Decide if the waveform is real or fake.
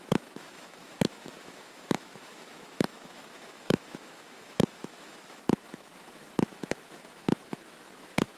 fake